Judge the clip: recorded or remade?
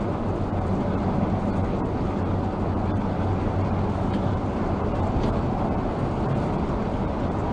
recorded